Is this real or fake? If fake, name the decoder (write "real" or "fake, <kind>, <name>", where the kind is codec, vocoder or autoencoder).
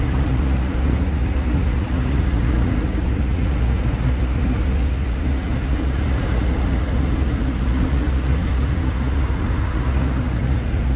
fake, vocoder, Vocos